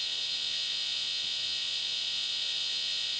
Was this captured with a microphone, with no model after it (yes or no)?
no